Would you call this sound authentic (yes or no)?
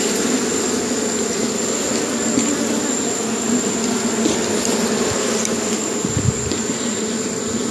yes